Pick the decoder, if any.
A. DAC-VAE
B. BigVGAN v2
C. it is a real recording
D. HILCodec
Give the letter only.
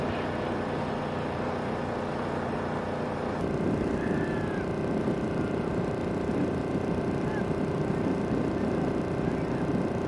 C